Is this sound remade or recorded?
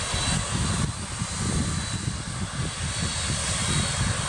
recorded